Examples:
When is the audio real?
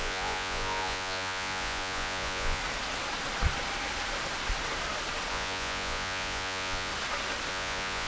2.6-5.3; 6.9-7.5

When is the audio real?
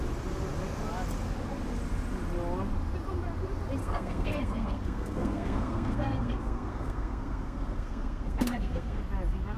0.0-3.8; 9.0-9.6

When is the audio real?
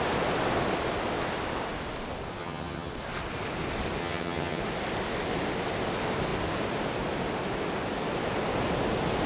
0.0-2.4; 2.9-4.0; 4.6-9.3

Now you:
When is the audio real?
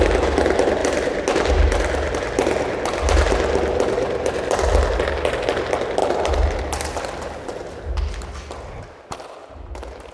0.0-6.0; 6.6-9.4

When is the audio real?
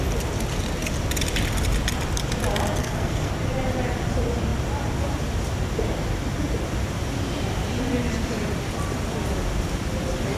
0.0-2.8; 3.3-10.4